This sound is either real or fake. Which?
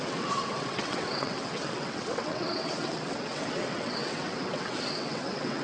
fake